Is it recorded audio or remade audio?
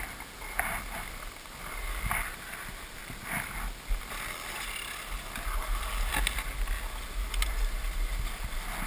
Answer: recorded